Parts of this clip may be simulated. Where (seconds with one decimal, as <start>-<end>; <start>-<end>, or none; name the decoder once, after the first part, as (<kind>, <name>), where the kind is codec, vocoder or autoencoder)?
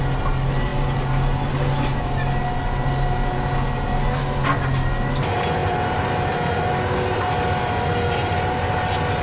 none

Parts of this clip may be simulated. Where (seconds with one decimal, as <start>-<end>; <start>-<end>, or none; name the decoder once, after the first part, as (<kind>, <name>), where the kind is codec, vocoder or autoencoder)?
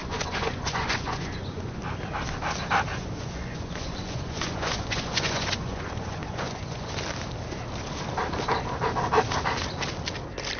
0.0-1.8 (vocoder, Vocos); 2.9-6.9